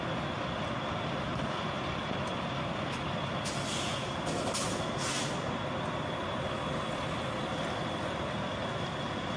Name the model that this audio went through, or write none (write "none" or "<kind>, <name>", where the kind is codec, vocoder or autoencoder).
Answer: none